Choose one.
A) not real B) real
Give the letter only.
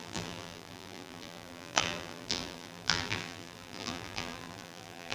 A